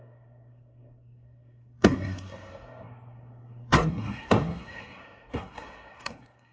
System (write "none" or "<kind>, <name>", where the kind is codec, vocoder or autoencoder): codec, SNAC